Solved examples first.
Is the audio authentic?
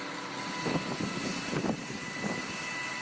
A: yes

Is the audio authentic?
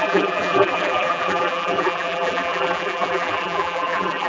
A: no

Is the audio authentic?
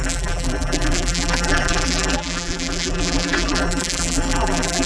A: no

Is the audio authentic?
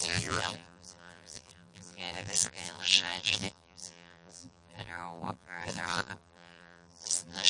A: no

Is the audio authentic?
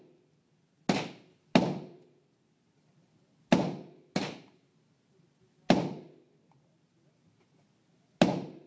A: yes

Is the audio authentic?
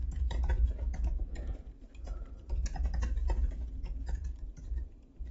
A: no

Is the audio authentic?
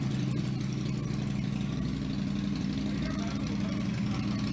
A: yes